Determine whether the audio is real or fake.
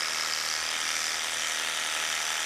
real